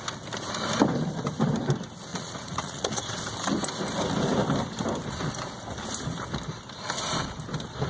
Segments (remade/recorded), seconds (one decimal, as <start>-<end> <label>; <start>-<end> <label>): 0.0-2.1 recorded; 2.1-3.0 remade; 3.0-7.9 recorded